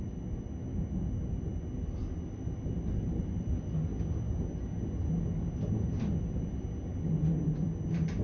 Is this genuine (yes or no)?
yes